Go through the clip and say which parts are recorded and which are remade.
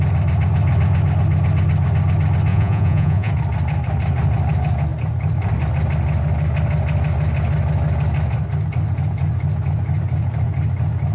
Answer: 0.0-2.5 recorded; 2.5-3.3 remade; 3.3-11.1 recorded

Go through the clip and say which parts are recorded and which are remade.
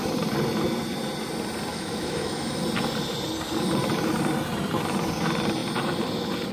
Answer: 0.0-1.7 recorded; 1.7-2.6 remade; 2.6-6.5 recorded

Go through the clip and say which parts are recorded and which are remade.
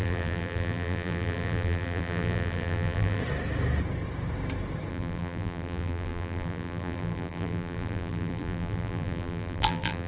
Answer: 0.0-3.2 remade; 3.2-4.9 recorded; 4.9-10.1 remade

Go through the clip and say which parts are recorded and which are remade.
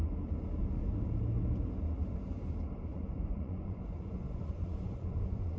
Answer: 0.0-2.9 recorded; 2.9-5.6 remade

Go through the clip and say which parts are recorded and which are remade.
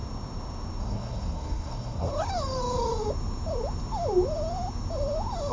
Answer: 0.0-0.8 recorded; 0.8-2.1 remade; 2.1-5.5 recorded